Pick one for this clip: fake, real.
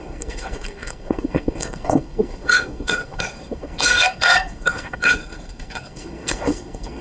fake